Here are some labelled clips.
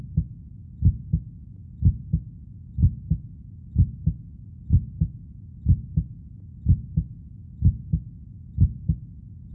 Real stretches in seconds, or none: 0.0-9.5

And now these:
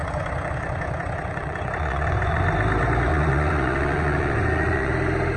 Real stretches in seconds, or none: 2.4-3.1; 4.9-5.4